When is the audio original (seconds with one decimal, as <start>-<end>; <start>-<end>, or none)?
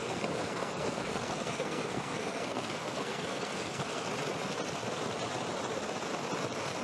4.1-6.8